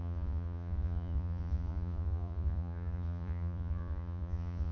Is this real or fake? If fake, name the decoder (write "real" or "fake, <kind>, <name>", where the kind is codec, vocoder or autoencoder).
fake, vocoder, Vocos